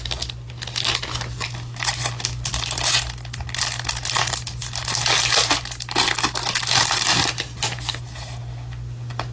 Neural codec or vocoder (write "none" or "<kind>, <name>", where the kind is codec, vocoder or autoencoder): none